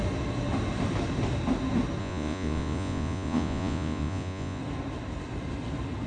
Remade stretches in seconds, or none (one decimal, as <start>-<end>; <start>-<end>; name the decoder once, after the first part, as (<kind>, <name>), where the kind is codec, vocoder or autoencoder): 2.0-4.6 (vocoder, Vocos)